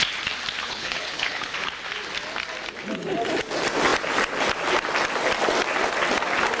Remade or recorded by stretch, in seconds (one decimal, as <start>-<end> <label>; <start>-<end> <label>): 0.0-0.6 recorded; 0.6-1.7 remade; 1.7-6.6 recorded